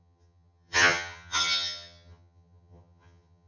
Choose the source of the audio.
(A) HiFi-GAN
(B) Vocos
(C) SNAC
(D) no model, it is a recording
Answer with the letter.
A